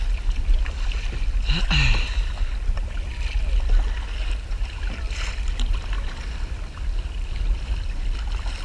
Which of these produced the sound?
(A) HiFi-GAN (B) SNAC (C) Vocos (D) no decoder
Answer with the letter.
D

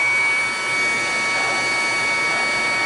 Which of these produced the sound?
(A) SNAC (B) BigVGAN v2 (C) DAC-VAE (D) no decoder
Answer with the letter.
D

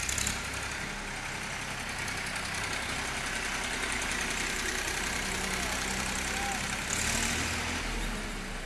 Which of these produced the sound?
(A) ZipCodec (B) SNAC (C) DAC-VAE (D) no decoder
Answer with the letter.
D